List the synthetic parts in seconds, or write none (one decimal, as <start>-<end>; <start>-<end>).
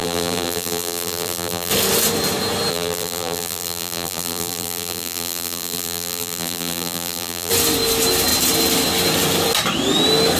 0.0-1.7; 2.7-7.5